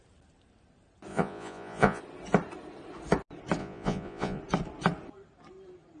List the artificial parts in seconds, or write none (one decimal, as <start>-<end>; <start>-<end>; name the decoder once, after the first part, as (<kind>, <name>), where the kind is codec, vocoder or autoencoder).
1.1-2.0 (vocoder, Vocos); 3.6-4.4